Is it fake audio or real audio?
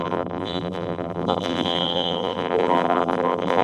fake